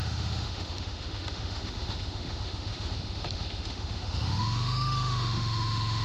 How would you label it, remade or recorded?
remade